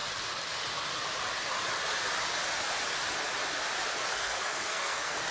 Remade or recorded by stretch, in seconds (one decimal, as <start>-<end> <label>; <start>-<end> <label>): 0.0-4.1 recorded; 4.1-5.3 remade